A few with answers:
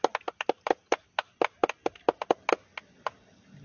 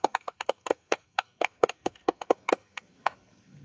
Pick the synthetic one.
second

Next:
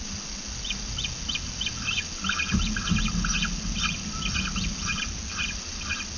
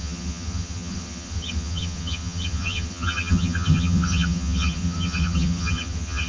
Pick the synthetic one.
second